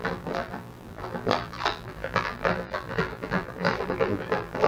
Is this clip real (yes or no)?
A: no